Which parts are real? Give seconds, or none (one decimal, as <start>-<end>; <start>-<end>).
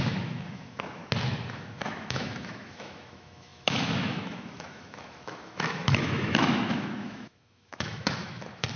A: 1.0-1.5